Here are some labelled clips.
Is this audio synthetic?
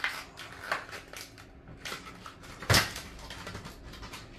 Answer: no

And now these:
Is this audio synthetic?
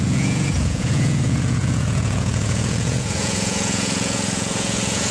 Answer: yes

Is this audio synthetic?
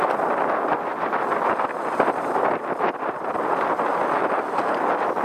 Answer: no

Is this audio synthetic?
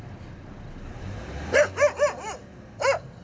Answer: no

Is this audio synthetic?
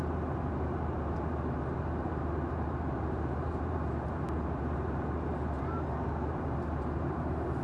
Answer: yes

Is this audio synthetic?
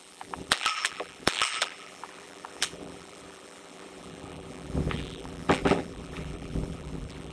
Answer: yes